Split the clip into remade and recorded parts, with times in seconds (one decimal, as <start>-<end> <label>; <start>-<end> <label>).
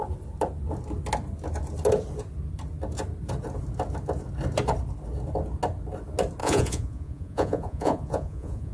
0.0-6.4 recorded; 6.4-8.7 remade